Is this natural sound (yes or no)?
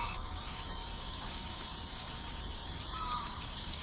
no